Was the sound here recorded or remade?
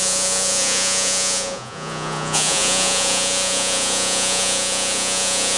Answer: remade